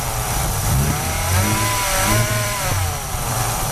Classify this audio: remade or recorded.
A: remade